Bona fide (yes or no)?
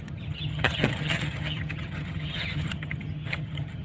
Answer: no